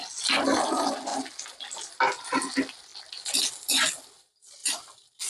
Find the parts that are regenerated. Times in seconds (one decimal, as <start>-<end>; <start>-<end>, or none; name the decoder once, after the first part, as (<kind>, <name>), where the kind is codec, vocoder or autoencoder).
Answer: none